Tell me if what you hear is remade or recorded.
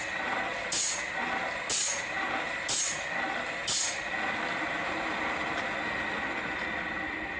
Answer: recorded